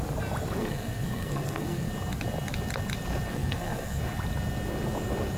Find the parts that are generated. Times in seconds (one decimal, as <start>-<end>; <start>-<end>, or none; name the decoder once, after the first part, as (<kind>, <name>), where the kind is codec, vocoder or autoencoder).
0.6-1.9 (codec, SNAC); 3.3-4.0